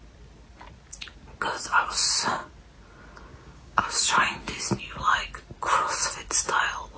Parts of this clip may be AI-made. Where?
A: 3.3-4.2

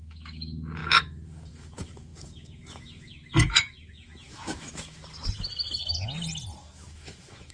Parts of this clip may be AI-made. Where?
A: 0.0-5.0; 6.6-7.5

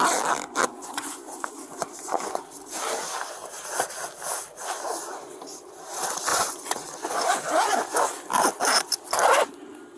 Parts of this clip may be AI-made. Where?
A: 0.7-2.4; 6.3-8.0